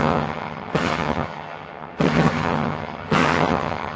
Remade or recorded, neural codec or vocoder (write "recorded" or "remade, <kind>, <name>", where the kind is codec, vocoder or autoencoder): remade, vocoder, HiFi-GAN